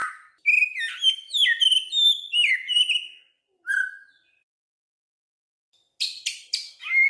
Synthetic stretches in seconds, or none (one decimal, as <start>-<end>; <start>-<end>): none